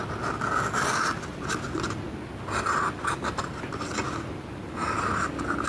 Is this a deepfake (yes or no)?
no